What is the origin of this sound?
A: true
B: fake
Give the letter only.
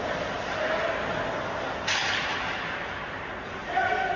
A